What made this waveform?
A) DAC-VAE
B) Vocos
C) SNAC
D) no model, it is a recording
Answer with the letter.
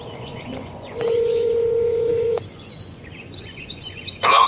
B